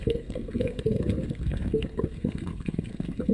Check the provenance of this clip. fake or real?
fake